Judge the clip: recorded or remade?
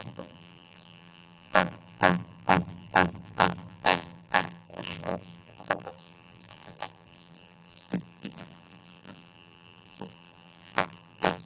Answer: remade